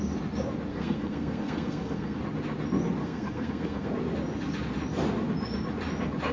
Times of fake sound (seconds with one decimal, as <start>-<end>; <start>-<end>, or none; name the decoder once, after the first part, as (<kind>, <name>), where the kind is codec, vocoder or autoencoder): 0.7-2.2 (codec, SNAC); 3.0-3.9